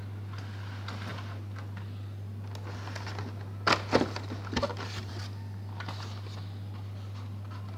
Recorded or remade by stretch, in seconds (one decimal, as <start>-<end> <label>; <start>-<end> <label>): 0.0-7.8 recorded